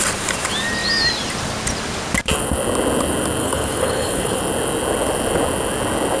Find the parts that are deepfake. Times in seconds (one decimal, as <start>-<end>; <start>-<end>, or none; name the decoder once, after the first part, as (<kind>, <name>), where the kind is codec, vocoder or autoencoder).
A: 3.4-4.4 (codec, HILCodec)